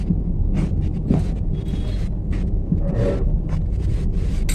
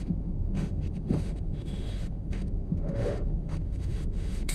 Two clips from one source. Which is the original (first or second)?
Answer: first